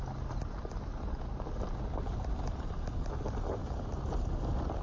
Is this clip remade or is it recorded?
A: recorded